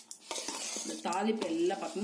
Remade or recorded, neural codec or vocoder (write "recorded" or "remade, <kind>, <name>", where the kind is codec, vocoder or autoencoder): recorded